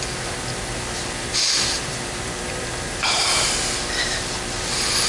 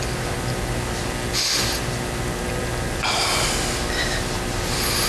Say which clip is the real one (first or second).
second